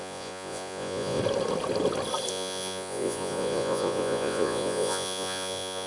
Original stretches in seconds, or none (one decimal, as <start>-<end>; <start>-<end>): 1.2-2.3